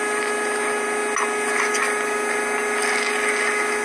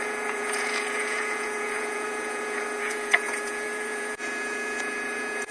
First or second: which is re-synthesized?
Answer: second